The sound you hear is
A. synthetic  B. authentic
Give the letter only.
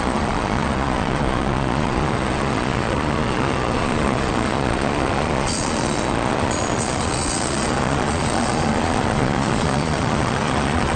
A